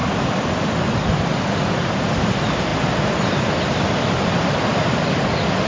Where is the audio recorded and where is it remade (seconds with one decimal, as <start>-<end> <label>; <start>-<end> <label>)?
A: 0.0-2.0 remade; 2.0-4.7 recorded; 4.7-5.3 remade; 5.3-5.7 recorded